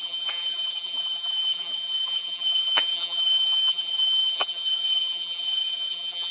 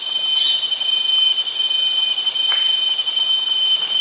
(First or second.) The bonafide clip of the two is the second